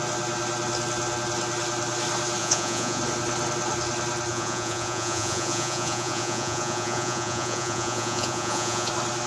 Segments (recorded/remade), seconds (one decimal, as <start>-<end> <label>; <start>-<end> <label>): 0.0-2.4 recorded; 2.4-3.0 remade; 3.0-4.3 recorded; 4.3-8.9 remade; 8.9-9.3 recorded